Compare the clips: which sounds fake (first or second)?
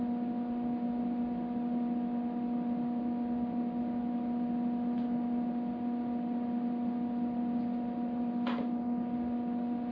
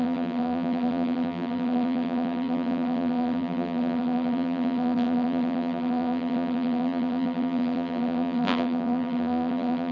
second